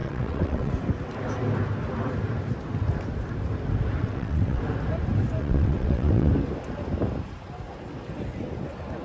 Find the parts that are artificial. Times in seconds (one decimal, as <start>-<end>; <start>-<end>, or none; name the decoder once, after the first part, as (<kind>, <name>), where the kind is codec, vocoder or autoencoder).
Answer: 0.0-0.7 (vocoder, WaveNeXt); 4.0-4.6; 5.4-6.3